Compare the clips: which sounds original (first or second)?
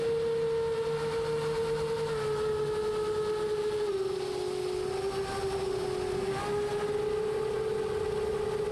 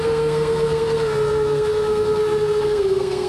first